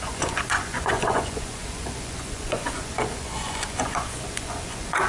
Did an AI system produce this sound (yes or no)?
yes